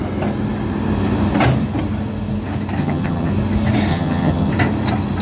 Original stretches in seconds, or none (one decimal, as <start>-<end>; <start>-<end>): 0.0-2.8; 3.3-3.9; 4.5-5.2